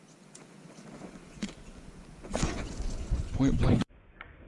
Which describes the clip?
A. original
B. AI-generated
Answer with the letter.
B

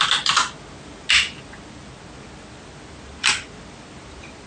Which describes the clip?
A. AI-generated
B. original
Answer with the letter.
B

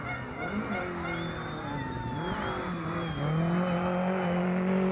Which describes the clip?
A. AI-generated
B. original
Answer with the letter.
B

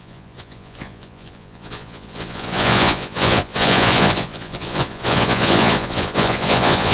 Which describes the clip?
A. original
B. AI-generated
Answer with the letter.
B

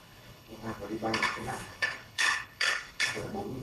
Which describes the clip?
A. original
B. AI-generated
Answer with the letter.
B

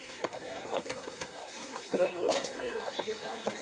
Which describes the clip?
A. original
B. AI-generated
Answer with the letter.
B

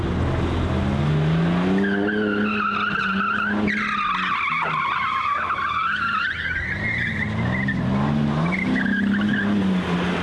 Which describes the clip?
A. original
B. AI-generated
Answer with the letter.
A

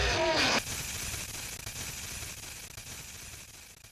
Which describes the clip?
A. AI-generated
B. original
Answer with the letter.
B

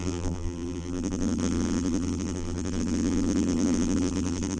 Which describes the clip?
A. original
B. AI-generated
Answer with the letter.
B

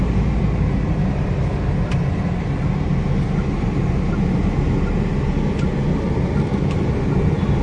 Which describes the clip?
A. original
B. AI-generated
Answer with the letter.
A